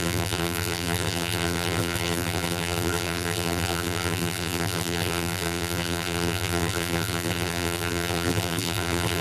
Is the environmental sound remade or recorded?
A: remade